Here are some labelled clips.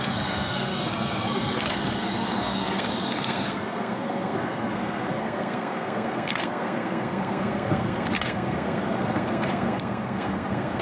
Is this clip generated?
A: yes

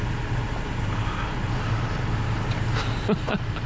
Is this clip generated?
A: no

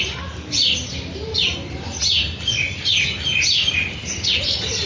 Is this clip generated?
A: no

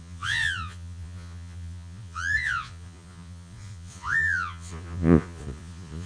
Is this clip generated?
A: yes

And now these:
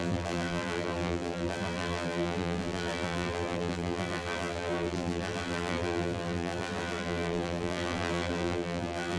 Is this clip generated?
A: yes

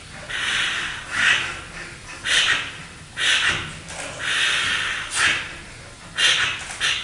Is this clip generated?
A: no